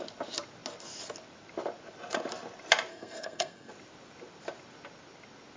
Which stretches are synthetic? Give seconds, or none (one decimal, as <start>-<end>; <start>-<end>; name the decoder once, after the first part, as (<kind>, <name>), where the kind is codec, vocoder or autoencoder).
2.9-3.7 (codec, SNAC)